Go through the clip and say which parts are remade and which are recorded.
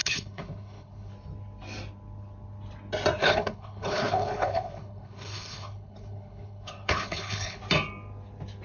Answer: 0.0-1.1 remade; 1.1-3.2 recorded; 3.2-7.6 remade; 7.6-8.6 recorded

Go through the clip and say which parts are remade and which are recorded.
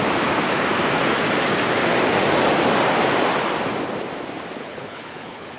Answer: 0.0-4.6 recorded; 4.6-5.6 remade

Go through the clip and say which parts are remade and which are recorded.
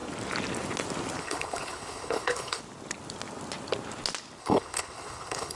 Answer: 0.0-1.2 recorded; 1.2-2.6 remade; 2.6-4.4 recorded; 4.4-5.6 remade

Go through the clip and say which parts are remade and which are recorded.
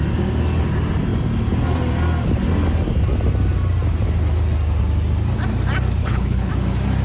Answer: 0.0-6.0 recorded; 6.0-6.5 remade; 6.5-7.0 recorded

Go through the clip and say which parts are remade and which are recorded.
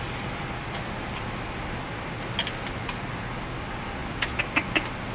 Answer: 0.0-5.1 recorded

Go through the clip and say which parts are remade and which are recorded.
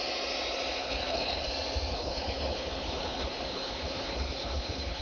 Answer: 0.0-0.8 recorded; 0.8-1.5 remade; 1.5-1.9 recorded; 1.9-5.0 remade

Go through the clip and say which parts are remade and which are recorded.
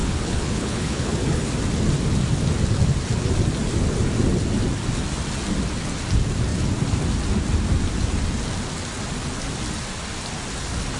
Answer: 0.0-1.5 remade; 1.5-11.0 recorded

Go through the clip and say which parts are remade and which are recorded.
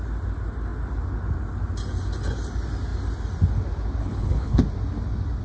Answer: 0.0-4.0 recorded; 4.0-4.6 remade; 4.6-5.4 recorded